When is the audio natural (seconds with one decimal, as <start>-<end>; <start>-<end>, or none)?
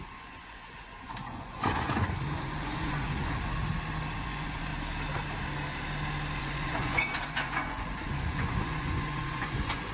3.5-4.2; 4.7-6.4